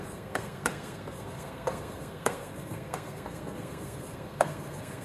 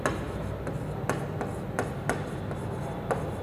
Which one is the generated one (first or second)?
first